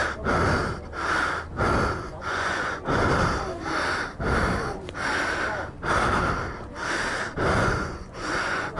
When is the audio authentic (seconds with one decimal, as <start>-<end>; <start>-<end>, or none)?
0.0-2.0; 3.0-7.5